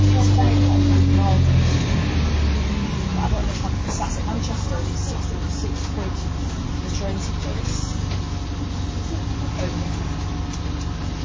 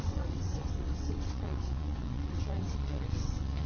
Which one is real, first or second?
first